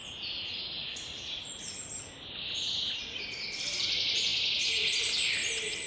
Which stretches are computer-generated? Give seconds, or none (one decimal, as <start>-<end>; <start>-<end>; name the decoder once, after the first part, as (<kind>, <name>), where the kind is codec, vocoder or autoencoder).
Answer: 0.0-1.7 (vocoder, Vocos)